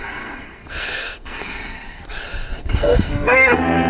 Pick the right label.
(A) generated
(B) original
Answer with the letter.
A